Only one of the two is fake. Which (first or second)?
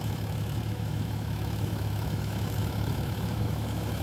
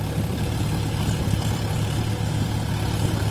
first